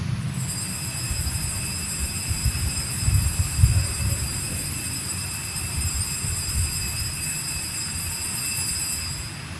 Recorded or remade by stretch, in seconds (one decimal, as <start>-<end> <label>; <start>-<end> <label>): 0.0-2.4 recorded; 2.4-6.0 remade; 6.0-9.6 recorded